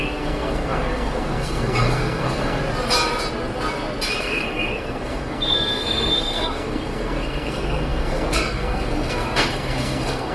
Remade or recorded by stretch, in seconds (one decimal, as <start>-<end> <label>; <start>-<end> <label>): 0.0-2.6 remade; 2.6-4.2 recorded; 4.2-10.3 remade